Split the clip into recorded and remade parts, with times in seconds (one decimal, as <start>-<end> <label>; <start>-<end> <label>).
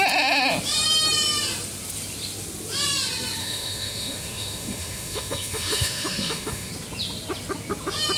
0.0-3.4 recorded; 3.4-6.7 remade; 6.7-8.2 recorded